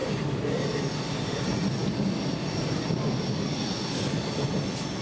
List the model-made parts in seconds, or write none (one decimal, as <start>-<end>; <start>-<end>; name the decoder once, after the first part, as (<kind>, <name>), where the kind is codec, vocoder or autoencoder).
none